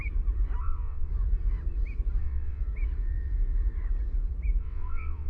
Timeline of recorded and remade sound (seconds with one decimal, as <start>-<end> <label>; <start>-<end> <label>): 0.0-0.6 recorded; 0.6-1.1 remade; 1.1-2.2 recorded; 2.2-2.6 remade; 2.6-4.6 recorded; 4.6-5.3 remade